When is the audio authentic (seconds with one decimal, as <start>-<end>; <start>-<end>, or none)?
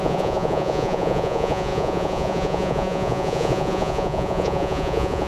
none